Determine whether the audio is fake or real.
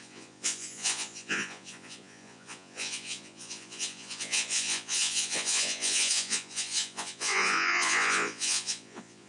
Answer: fake